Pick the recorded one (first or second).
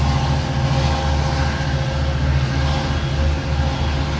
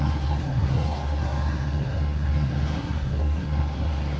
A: first